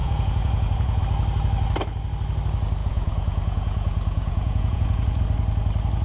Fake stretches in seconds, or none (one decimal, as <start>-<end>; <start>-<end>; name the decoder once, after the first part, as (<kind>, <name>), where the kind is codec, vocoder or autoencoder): 0.0-1.0 (vocoder, Vocos); 2.8-5.2

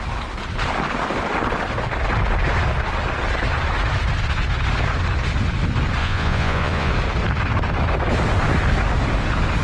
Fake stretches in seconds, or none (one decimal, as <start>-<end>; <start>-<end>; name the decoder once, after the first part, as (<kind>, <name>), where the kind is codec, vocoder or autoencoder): 6.0-6.9 (vocoder, Vocos)

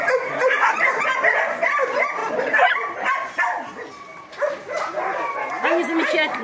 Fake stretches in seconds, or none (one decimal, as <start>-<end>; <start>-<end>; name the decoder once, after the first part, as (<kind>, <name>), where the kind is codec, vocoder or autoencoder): none

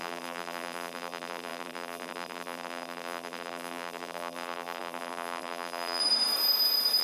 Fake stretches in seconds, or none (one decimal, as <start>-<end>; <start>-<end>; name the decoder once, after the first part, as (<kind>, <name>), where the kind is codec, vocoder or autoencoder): 0.0-6.0 (vocoder, BigVGAN v2)

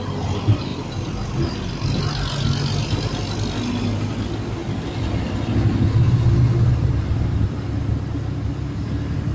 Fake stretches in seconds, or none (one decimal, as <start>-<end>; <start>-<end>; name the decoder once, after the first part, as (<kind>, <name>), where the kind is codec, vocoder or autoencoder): 0.7-2.0 (vocoder, BigVGAN v2)

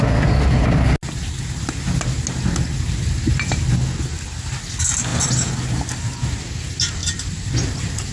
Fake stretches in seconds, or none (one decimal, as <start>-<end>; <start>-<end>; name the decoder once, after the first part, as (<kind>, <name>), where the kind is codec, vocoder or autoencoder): 7.0-7.5 (vocoder, BigVGAN v2)

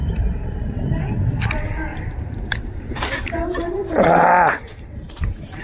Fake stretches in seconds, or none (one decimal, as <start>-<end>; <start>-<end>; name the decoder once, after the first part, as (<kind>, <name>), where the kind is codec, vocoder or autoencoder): 0.0-0.6 (vocoder, BigVGAN v2); 1.9-5.6